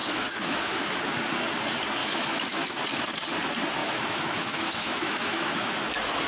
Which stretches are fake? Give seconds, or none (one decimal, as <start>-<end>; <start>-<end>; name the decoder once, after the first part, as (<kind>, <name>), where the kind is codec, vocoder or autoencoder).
0.0-1.0 (autoencoder, DAC-VAE); 2.0-2.8; 3.8-5.7